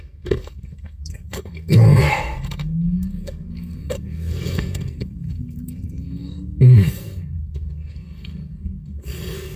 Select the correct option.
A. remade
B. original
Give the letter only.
A